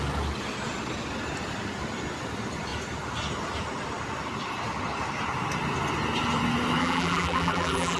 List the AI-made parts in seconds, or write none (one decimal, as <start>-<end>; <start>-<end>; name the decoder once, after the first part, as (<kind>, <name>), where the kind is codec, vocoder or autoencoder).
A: 6.8-8.0 (vocoder, BigVGAN v2)

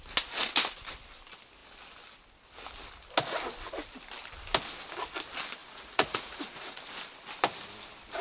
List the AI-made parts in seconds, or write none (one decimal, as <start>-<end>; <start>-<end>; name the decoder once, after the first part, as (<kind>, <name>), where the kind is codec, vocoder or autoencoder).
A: 5.6-6.8 (vocoder, Vocos)

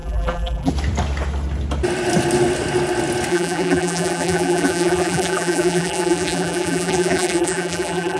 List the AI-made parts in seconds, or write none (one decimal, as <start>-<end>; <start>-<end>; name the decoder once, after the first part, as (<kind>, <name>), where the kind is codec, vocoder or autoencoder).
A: 0.0-0.7 (vocoder, BigVGAN v2); 3.3-8.2

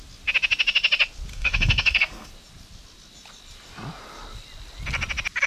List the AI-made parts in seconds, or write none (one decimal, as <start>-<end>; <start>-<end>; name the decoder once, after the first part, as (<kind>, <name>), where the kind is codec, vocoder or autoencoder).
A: 1.3-2.3 (codec, SNAC)

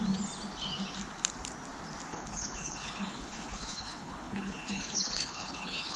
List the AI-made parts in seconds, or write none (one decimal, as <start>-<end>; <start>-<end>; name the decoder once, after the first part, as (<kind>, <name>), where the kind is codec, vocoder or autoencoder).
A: 2.1-6.0 (codec, HILCodec)